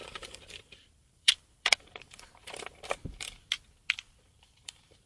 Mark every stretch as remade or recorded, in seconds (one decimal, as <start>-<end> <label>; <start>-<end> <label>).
0.0-2.7 remade; 2.7-4.6 recorded; 4.6-5.1 remade